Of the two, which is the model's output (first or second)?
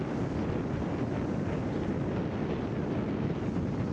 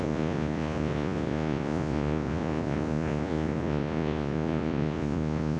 second